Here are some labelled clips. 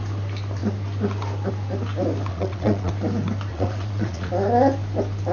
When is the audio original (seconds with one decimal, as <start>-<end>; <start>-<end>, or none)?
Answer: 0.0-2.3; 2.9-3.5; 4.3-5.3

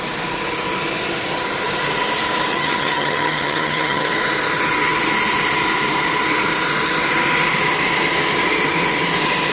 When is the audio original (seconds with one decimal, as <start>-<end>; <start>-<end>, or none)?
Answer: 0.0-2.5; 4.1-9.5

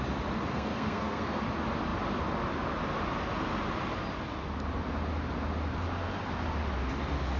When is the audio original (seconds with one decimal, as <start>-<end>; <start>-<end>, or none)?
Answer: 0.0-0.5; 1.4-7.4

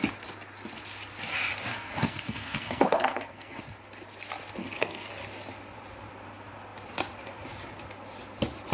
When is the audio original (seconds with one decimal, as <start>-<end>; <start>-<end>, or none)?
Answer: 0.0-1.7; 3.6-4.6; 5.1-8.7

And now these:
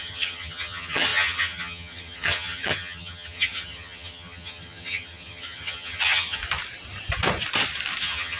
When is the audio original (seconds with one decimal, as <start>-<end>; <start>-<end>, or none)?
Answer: 6.4-8.0